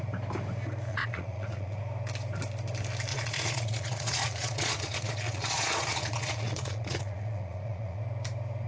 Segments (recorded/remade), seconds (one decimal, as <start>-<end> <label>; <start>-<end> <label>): 0.0-0.9 recorded; 0.9-1.8 remade; 1.8-3.1 recorded; 3.1-8.0 remade; 8.0-8.7 recorded